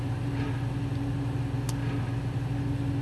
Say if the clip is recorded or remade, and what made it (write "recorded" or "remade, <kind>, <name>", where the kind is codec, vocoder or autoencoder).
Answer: recorded